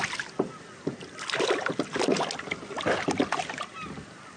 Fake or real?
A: real